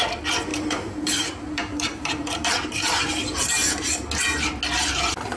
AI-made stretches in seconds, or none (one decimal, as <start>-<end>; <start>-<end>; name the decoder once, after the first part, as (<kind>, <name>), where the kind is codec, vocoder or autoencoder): 0.5-3.7 (vocoder, BigVGAN v2)